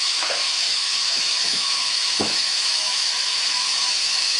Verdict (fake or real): fake